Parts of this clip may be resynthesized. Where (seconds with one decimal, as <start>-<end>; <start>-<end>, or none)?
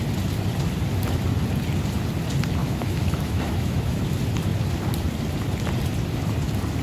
2.6-4.0